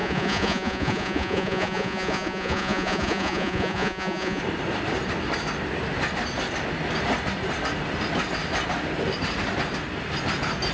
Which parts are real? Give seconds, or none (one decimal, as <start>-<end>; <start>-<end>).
4.4-10.7